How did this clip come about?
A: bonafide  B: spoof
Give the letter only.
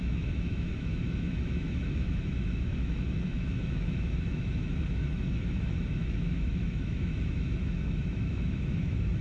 B